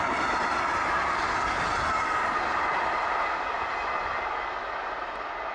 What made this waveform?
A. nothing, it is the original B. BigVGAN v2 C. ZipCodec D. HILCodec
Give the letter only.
A